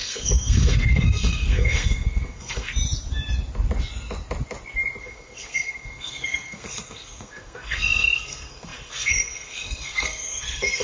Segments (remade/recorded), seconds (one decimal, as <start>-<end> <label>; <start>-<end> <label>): 0.0-2.7 remade; 2.7-5.0 recorded; 5.0-10.8 remade